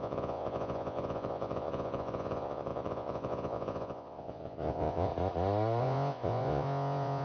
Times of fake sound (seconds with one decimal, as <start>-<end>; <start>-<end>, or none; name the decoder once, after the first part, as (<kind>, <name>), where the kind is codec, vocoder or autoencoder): 0.0-5.1 (vocoder, Vocos); 5.8-7.2